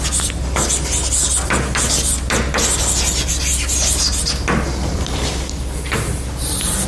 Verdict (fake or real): real